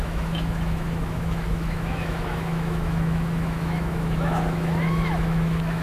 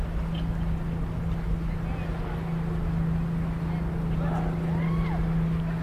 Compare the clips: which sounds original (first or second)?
second